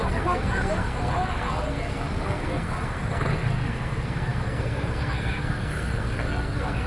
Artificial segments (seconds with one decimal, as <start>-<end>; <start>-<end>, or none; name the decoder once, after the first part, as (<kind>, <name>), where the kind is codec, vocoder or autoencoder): 0.0-6.9 (codec, SNAC)